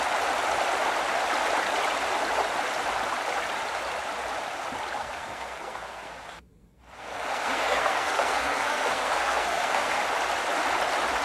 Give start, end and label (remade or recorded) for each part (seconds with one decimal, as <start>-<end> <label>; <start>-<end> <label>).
0.0-5.0 recorded; 5.0-10.0 remade; 10.0-11.2 recorded